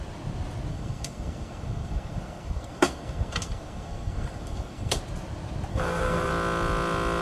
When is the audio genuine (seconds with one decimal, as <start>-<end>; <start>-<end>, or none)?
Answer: 0.0-0.7; 5.0-5.7; 6.3-7.2